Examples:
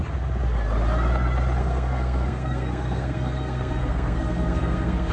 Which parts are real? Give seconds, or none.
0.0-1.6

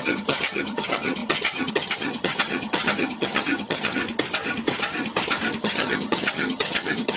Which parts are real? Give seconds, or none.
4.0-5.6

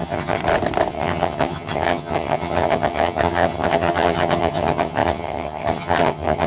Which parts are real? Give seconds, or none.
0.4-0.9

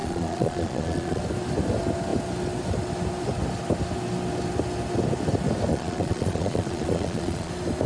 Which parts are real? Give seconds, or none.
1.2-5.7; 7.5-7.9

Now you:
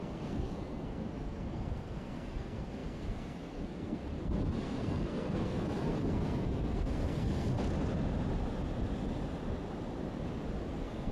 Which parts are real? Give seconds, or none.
7.5-10.7